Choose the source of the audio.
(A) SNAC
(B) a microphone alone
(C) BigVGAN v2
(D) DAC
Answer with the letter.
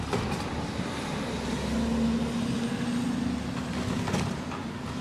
B